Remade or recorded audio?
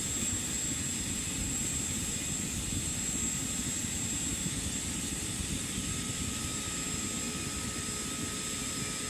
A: recorded